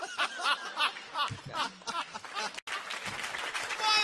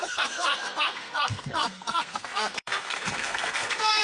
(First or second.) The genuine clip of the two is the first